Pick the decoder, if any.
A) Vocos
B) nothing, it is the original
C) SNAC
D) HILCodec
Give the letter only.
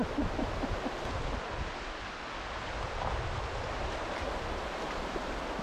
B